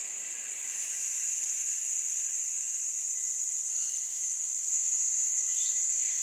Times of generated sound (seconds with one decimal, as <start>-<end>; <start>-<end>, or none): 3.7-6.2